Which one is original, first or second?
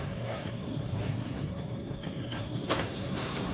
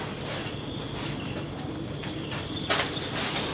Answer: second